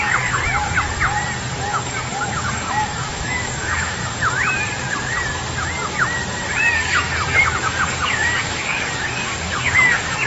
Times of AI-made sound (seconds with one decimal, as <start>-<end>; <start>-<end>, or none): 0.0-0.4; 1.7-4.0; 6.7-10.3